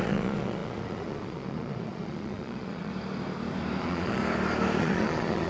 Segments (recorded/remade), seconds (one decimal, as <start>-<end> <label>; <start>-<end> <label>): 0.0-2.9 remade; 2.9-3.8 recorded; 3.8-4.2 remade; 4.2-4.8 recorded; 4.8-5.5 remade